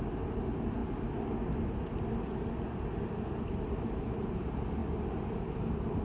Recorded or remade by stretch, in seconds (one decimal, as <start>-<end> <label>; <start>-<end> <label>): 0.0-6.0 recorded